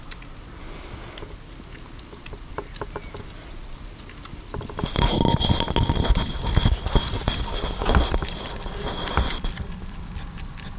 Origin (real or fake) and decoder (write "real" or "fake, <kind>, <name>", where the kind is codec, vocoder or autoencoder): real